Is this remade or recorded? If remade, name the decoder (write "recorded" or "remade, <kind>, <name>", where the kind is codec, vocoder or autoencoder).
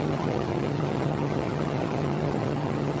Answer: remade, vocoder, HiFi-GAN